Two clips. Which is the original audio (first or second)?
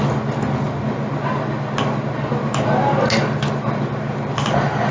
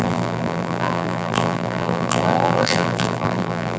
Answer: first